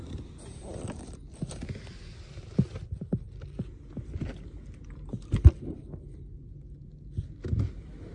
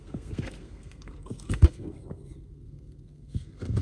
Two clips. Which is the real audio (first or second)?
first